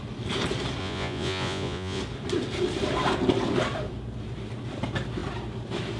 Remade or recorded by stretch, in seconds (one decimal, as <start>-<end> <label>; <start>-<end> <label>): 0.0-0.8 recorded; 0.8-2.0 remade; 2.0-6.0 recorded

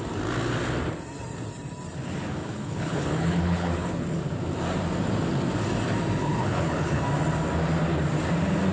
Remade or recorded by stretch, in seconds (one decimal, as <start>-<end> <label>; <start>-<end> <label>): 0.0-2.4 recorded; 2.4-4.2 remade; 4.2-6.2 recorded; 6.2-7.0 remade; 7.0-8.7 recorded